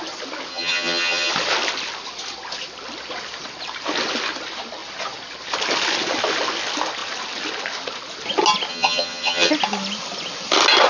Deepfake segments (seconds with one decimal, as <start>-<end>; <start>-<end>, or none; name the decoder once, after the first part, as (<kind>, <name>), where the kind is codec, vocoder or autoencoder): 0.5-1.3 (vocoder, HiFi-GAN); 8.7-9.5